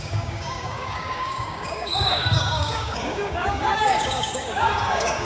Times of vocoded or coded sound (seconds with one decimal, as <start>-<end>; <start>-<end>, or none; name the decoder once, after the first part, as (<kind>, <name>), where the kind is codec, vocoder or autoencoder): 0.0-5.2 (codec, DAC)